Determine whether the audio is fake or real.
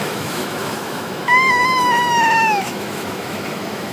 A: fake